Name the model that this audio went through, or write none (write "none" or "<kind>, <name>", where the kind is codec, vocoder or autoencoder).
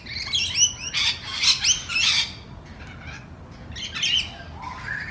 none